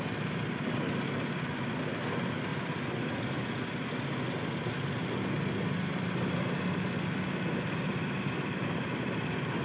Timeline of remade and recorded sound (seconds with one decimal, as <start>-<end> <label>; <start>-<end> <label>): 0.0-9.6 recorded